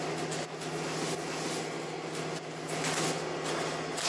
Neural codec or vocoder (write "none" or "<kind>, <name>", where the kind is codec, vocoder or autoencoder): none